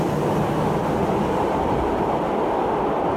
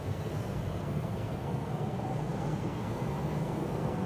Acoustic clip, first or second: first